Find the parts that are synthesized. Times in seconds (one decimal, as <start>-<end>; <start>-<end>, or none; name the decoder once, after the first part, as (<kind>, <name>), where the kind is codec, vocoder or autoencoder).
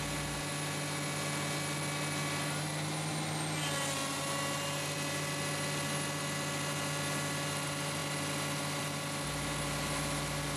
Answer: none